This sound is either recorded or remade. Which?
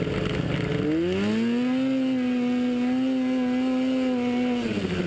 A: recorded